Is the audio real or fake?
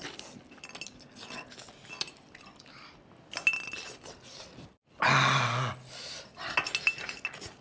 real